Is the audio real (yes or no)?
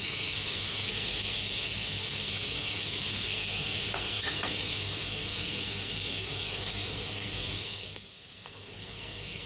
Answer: no